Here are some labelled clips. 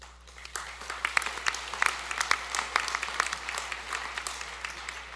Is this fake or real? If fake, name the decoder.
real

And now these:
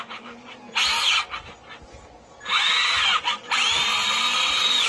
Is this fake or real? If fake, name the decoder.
real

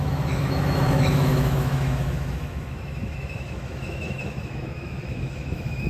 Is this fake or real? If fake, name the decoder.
fake, autoencoder, DAC-VAE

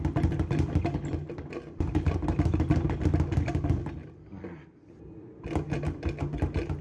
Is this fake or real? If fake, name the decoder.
real